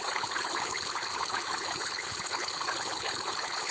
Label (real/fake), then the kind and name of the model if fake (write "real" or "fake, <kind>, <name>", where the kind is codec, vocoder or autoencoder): fake, codec, HILCodec